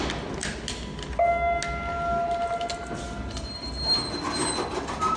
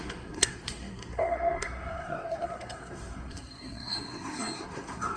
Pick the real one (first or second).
first